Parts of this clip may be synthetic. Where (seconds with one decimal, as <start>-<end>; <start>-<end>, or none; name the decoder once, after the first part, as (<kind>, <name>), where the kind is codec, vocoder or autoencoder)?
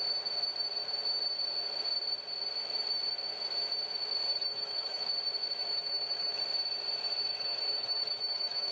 4.3-5.0 (autoencoder, DAC-VAE); 5.6-6.4; 7.3-8.7